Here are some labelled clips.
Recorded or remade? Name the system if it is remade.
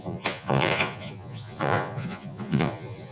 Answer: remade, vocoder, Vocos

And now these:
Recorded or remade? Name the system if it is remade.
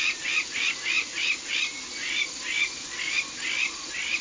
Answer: recorded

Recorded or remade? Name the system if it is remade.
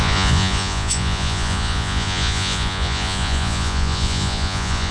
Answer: remade, vocoder, Vocos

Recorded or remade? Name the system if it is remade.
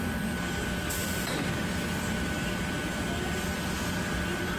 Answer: recorded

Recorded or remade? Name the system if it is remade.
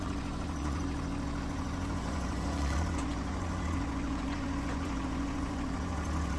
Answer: remade, vocoder, Vocos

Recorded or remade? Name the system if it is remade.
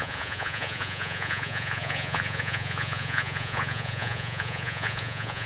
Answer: remade, vocoder, Vocos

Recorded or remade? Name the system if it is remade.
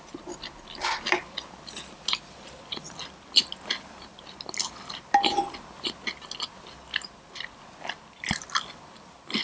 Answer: recorded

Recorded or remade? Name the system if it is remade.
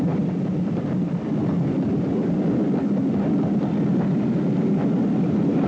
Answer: recorded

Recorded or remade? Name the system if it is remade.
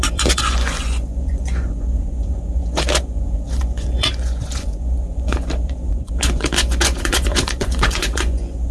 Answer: remade, vocoder, Vocos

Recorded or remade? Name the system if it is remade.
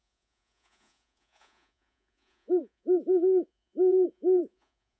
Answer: remade, vocoder, Vocos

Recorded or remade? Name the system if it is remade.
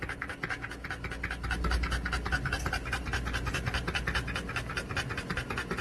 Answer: recorded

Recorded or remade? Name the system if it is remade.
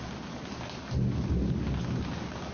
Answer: recorded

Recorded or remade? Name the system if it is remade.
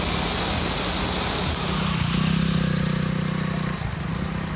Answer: recorded